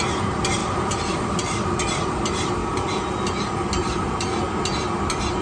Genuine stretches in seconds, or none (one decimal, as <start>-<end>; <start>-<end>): 0.0-0.6; 1.8-5.4